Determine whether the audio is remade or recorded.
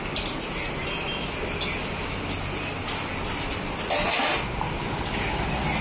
recorded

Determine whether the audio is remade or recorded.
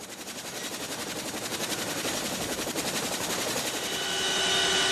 recorded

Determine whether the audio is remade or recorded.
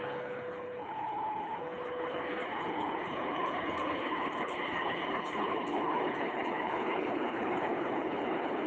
remade